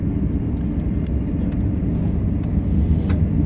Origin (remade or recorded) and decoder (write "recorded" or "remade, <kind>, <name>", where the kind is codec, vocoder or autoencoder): recorded